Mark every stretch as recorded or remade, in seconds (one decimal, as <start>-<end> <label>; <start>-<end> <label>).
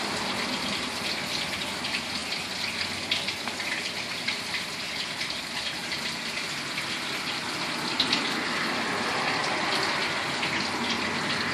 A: 0.0-11.5 recorded